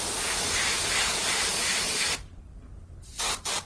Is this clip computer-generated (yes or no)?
no